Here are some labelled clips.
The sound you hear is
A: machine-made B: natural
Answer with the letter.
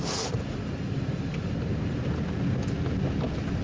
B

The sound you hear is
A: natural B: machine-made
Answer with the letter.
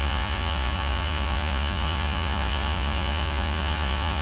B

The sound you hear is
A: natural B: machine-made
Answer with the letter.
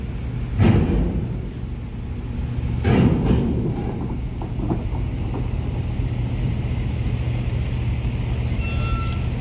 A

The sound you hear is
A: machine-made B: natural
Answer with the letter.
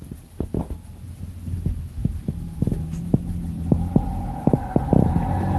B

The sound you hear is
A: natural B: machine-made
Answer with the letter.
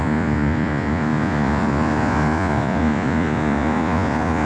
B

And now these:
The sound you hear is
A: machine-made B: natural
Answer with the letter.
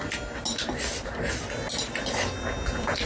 B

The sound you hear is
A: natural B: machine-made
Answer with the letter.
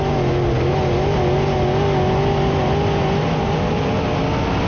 A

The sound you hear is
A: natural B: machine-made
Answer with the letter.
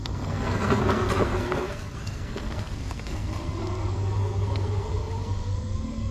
B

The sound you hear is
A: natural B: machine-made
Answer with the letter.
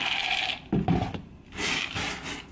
A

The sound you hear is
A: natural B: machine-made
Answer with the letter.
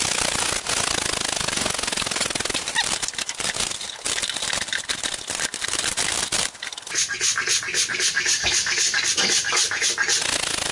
A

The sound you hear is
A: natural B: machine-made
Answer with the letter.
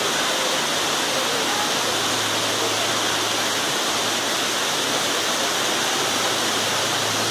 A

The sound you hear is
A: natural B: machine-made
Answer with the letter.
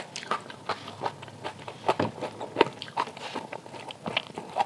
A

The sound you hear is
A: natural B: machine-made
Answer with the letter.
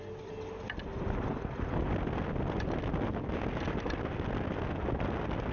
A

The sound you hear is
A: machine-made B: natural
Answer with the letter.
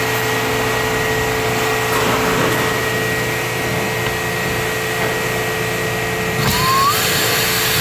B